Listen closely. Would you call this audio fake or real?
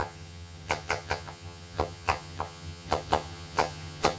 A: fake